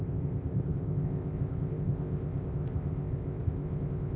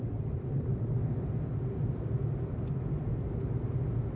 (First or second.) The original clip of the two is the second